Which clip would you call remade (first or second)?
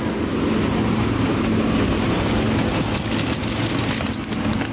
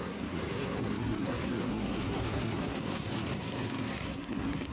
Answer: second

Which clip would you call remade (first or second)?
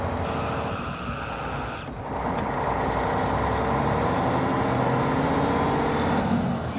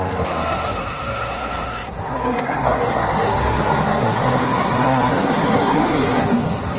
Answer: second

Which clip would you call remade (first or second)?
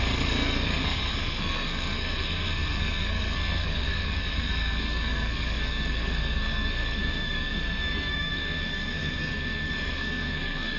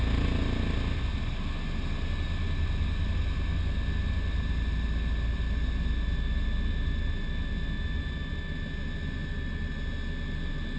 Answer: first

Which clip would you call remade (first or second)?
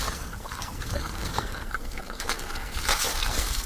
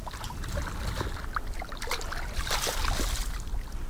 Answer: first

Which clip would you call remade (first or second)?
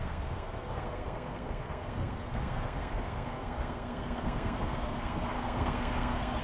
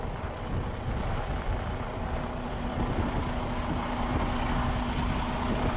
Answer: first